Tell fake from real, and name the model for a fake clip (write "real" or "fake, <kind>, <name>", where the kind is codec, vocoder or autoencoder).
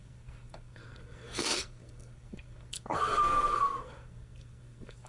fake, codec, SNAC